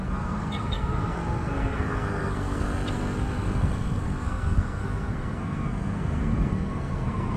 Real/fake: fake